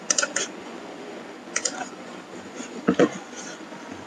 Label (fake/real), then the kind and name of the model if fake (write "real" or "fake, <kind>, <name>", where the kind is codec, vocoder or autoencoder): fake, vocoder, Vocos